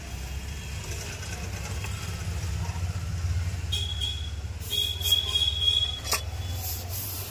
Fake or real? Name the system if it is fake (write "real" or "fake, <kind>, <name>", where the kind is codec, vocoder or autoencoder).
real